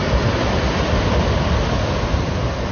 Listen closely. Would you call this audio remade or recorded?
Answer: recorded